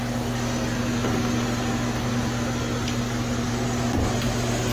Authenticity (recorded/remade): recorded